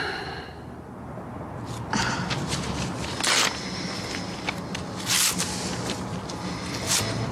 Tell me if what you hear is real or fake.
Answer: real